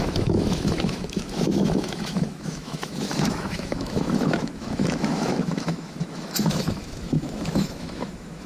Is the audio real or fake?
fake